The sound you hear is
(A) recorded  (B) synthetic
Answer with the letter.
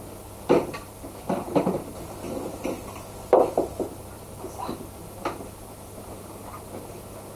A